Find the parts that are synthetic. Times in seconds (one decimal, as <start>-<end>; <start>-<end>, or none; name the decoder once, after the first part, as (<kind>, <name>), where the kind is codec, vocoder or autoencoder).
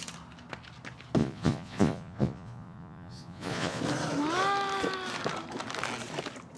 1.2-3.8 (vocoder, Vocos)